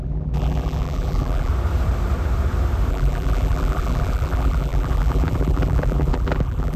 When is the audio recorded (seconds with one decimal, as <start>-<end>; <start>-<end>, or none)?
1.5-2.9